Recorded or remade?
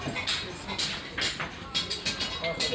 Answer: recorded